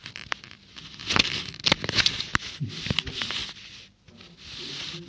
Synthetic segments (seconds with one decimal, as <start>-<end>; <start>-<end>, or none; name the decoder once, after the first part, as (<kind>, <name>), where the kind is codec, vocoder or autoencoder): none